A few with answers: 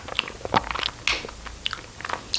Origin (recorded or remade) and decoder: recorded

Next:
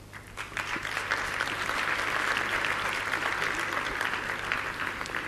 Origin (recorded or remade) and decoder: recorded